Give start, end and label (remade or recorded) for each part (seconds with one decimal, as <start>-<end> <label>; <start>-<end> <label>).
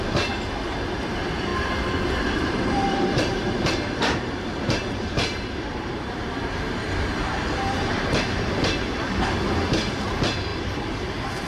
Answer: 0.0-1.5 recorded; 1.5-6.3 remade; 6.3-11.5 recorded